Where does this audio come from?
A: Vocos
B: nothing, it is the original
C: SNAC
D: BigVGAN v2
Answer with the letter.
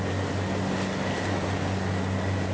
B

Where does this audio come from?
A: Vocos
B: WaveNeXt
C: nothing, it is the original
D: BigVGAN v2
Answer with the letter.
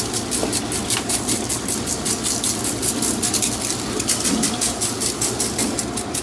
C